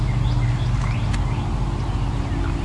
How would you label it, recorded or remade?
recorded